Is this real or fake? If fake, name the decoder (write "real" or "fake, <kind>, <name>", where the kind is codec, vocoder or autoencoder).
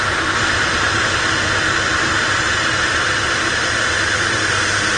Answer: real